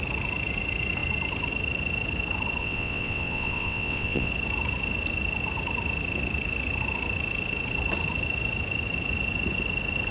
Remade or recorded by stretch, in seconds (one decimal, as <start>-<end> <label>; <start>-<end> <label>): 0.0-2.6 recorded; 2.6-4.3 remade; 4.3-10.1 recorded